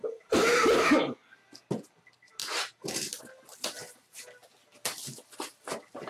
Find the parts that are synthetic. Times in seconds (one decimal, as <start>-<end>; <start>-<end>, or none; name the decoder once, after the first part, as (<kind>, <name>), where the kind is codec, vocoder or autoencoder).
0.0-0.9 (vocoder, BigVGAN v2); 2.4-3.2